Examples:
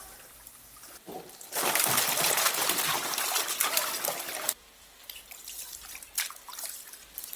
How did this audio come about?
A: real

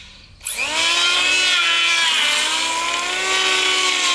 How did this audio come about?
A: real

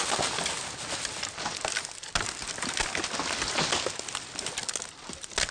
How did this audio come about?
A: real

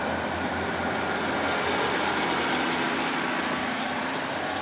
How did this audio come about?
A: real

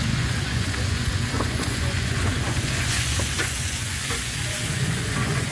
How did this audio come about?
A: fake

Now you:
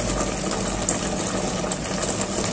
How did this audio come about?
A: real